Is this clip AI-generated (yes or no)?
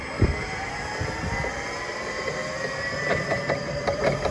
no